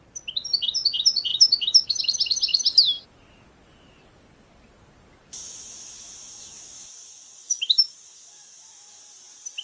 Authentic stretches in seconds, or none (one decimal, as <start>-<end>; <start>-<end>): 0.0-1.3; 2.0-5.4; 9.0-9.6

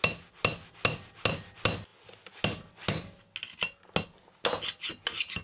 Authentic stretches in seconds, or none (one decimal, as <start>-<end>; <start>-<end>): 0.0-5.4

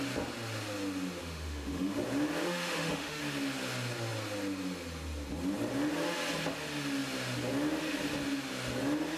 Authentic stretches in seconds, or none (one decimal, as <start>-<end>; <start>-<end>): 0.0-1.2; 2.0-2.4; 3.2-9.2

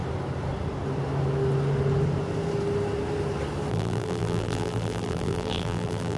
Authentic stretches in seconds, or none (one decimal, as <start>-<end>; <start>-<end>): 0.0-3.7